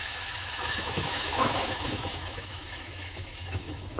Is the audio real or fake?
fake